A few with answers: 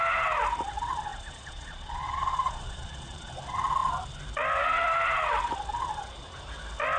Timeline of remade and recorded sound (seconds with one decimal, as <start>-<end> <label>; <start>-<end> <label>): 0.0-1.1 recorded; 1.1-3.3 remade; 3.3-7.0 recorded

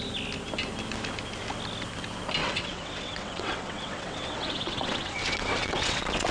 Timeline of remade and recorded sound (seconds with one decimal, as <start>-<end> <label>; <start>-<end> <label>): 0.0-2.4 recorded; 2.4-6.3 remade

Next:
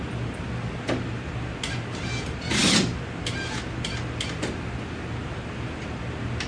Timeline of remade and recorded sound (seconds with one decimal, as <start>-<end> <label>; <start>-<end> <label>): 0.0-6.5 recorded

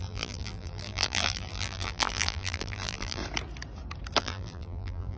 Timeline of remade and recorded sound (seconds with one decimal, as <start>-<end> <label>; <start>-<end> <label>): 0.0-3.2 remade; 3.2-4.2 recorded; 4.2-5.2 remade

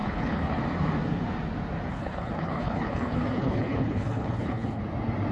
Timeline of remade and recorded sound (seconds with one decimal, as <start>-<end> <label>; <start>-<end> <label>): 0.0-0.6 remade; 0.6-1.9 recorded; 1.9-4.8 remade; 4.8-5.3 recorded